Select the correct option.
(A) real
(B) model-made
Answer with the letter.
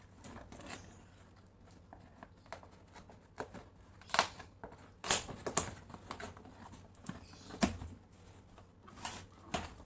A